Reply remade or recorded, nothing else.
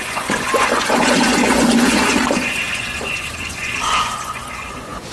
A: remade